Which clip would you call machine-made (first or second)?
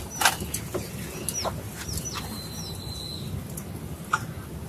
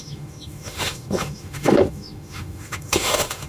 second